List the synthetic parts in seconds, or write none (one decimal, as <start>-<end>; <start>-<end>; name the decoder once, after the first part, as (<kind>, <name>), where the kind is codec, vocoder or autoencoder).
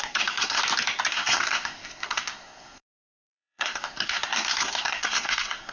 0.0-0.6 (codec, SNAC); 1.1-5.7